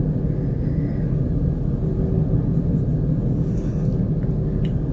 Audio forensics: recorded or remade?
recorded